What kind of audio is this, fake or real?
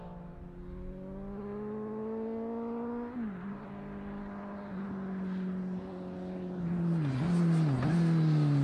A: real